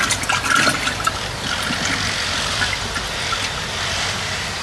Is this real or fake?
real